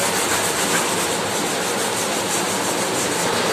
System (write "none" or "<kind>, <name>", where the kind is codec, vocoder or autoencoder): none